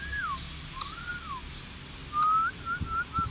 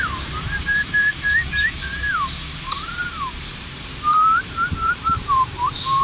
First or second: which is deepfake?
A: second